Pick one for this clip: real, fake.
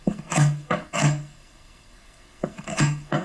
fake